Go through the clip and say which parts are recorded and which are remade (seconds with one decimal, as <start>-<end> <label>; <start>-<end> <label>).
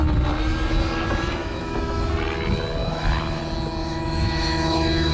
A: 0.0-1.4 recorded; 1.4-2.1 remade; 2.1-2.8 recorded; 2.8-3.4 remade; 3.4-3.8 recorded; 3.8-5.1 remade